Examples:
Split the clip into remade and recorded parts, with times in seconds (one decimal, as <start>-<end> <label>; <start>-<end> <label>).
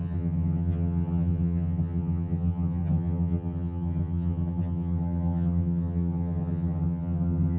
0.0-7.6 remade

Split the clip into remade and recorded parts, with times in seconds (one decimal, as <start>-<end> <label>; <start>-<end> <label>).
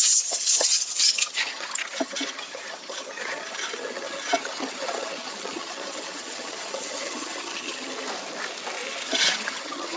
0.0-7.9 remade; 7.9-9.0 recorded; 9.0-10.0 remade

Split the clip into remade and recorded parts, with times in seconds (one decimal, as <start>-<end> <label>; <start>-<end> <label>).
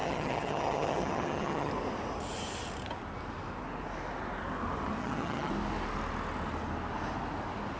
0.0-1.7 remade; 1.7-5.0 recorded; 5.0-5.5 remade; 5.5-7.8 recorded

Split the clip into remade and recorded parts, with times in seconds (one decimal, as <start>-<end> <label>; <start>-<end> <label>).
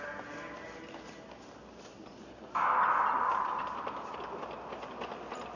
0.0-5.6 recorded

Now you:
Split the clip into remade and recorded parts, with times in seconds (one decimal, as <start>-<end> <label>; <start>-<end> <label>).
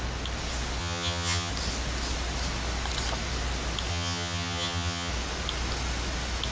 0.0-0.8 recorded; 0.8-1.5 remade; 1.5-3.9 recorded; 3.9-5.1 remade; 5.1-6.5 recorded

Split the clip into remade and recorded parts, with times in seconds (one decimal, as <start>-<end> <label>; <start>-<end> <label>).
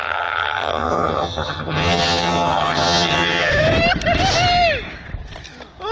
0.0-3.5 remade; 3.5-5.9 recorded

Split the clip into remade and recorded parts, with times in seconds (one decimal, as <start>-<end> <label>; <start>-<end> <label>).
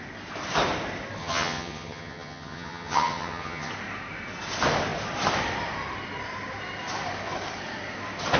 0.0-1.2 recorded; 1.2-3.7 remade; 3.7-8.4 recorded